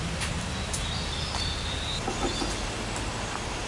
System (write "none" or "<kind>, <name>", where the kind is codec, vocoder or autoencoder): none